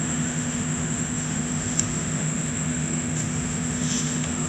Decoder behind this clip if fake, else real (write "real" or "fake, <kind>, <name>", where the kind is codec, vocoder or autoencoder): fake, autoencoder, DAC-VAE